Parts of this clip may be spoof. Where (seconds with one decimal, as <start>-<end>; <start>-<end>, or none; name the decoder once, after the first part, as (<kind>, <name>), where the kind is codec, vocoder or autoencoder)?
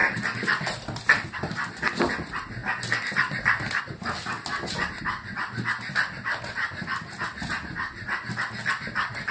none